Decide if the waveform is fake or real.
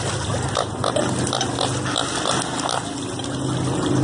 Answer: real